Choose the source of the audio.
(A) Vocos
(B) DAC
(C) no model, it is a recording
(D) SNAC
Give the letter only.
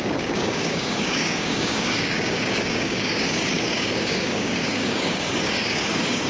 B